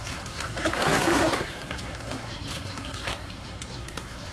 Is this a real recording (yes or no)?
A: no